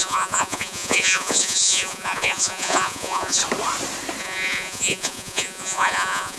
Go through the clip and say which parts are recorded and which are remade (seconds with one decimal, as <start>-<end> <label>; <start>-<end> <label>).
0.0-3.4 remade; 3.4-4.2 recorded; 4.2-6.4 remade